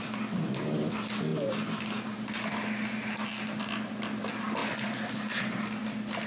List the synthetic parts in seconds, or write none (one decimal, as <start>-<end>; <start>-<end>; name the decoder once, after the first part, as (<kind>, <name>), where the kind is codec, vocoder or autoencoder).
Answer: none